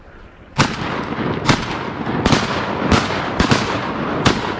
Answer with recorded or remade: recorded